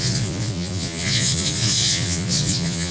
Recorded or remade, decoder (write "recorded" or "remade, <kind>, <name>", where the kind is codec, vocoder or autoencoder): remade, vocoder, Vocos